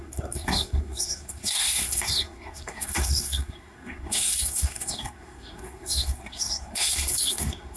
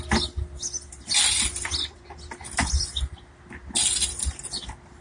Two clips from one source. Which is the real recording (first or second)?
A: second